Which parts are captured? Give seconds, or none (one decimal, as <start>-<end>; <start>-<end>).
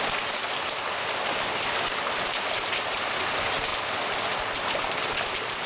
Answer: 0.4-2.3; 3.7-4.6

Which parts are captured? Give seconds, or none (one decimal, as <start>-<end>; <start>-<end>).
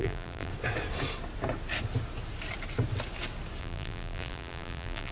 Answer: 0.5-3.6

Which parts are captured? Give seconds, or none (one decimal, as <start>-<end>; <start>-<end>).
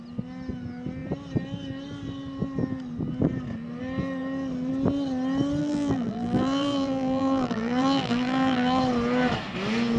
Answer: 0.0-5.6; 8.8-10.0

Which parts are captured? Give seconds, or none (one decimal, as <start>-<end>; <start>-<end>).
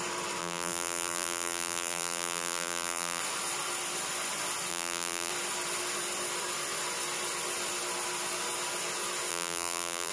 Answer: 0.0-0.4; 3.2-4.7; 5.3-9.3